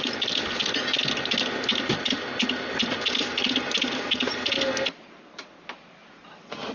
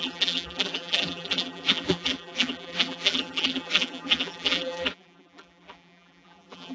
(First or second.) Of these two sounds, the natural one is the first